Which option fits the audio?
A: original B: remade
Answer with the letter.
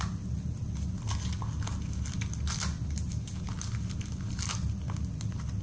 A